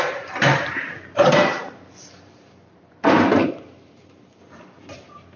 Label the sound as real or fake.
fake